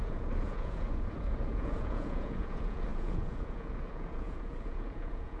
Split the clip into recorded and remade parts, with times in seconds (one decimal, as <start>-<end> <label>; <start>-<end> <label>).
0.0-5.4 remade